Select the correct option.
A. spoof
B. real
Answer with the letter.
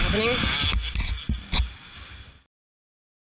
B